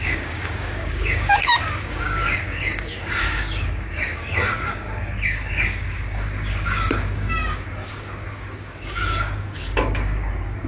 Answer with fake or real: fake